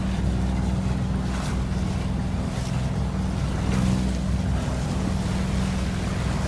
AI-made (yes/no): no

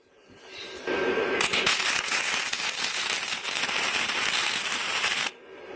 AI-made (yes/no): yes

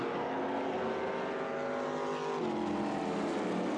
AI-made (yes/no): no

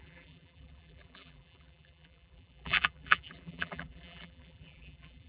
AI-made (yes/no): yes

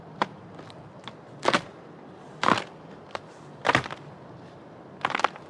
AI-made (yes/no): yes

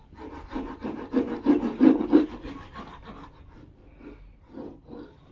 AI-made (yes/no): no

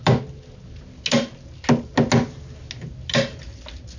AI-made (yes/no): no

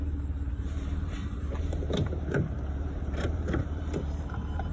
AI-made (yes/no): yes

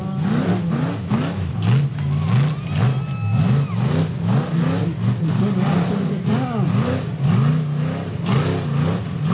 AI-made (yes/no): no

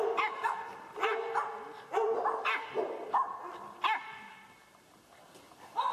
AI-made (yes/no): no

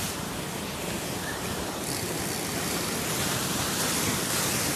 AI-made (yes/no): no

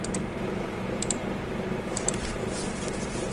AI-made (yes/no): yes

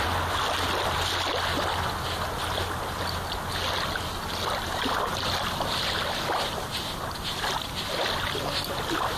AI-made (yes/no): no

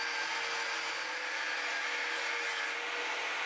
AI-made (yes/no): no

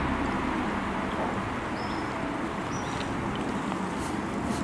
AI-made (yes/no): no